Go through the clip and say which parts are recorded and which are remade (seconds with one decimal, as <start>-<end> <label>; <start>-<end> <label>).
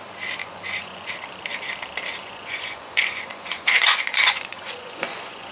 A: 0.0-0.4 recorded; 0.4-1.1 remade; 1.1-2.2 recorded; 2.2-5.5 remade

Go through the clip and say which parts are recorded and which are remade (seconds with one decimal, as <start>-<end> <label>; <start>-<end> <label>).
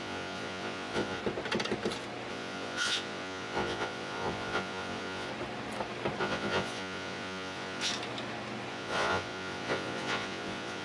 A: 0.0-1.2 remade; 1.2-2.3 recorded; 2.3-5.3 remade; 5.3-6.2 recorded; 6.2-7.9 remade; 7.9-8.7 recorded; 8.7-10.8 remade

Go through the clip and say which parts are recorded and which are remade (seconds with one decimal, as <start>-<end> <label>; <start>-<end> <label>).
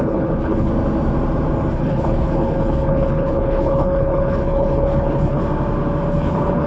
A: 0.0-0.7 remade; 0.7-1.7 recorded; 1.7-5.4 remade; 5.4-6.1 recorded; 6.1-6.7 remade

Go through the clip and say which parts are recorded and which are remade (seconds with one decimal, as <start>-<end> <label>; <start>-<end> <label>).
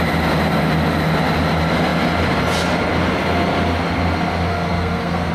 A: 0.0-4.5 recorded; 4.5-5.3 remade